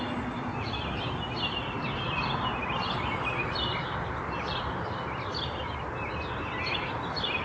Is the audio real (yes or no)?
yes